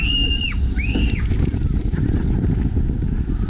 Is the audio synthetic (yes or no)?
no